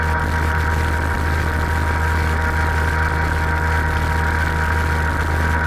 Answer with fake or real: real